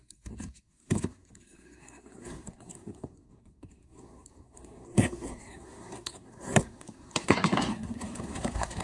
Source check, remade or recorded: remade